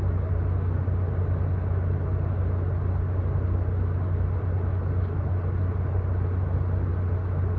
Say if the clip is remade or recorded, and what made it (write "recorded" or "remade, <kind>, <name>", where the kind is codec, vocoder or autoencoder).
recorded